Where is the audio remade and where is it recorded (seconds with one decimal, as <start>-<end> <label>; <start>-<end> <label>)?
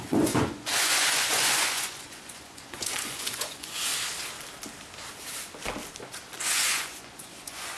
0.0-3.9 remade; 3.9-6.4 recorded; 6.4-7.8 remade